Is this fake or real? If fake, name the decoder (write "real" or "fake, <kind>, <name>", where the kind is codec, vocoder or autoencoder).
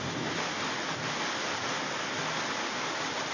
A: real